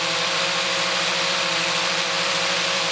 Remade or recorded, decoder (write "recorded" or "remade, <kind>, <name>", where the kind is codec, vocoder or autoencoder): remade, vocoder, BigVGAN v2